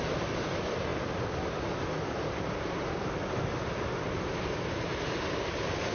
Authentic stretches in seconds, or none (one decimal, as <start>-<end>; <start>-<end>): 0.9-4.4; 4.9-5.9